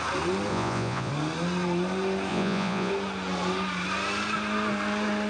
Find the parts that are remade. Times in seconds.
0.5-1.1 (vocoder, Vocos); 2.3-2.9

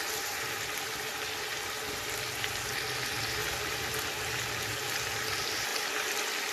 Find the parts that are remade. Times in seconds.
none

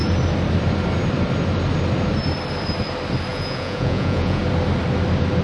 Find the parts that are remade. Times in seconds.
3.3-4.4 (vocoder, Vocos)

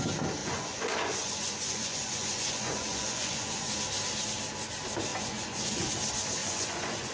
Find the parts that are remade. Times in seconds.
0.4-3.7 (vocoder, Vocos); 5.1-5.9; 6.4-7.1

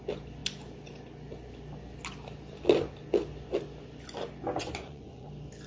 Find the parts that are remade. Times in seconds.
4.6-5.3 (vocoder, Vocos)

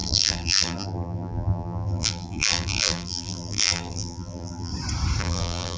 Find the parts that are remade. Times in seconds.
0.0-4.7 (vocoder, BigVGAN v2); 5.2-5.8

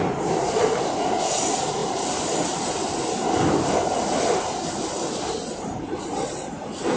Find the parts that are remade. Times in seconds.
none